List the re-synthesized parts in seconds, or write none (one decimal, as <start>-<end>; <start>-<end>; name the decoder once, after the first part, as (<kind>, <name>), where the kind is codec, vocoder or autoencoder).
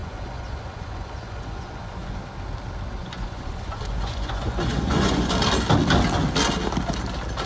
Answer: 0.0-2.2 (vocoder, Vocos); 3.0-5.3